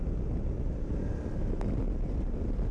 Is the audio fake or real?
real